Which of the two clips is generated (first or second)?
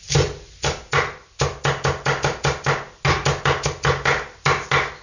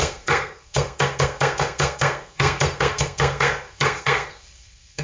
second